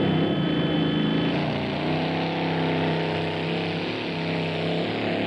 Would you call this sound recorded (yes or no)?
yes